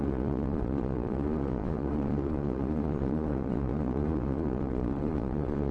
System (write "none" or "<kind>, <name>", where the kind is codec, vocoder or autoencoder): vocoder, Vocos